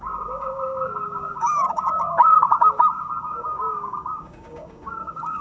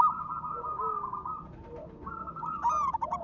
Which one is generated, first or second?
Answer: first